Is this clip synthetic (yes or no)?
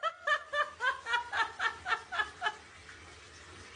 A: no